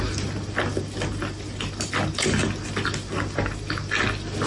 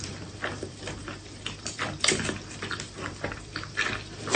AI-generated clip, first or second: second